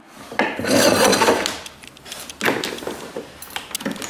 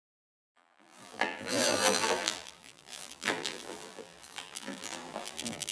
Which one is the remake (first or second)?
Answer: second